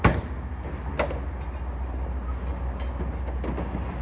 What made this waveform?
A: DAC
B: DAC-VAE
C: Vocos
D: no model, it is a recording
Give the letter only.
D